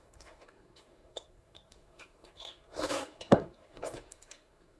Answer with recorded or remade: remade